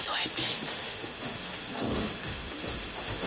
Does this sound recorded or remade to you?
remade